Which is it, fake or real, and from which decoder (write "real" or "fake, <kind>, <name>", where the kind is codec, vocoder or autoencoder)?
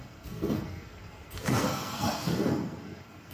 fake, codec, SNAC